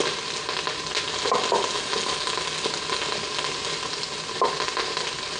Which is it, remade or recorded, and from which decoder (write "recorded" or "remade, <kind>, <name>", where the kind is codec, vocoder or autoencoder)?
recorded